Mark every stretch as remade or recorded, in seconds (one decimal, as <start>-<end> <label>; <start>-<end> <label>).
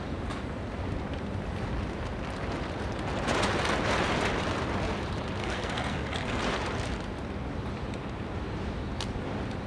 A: 0.0-5.4 recorded; 5.4-6.4 remade; 6.4-9.7 recorded